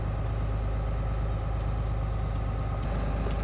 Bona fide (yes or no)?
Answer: yes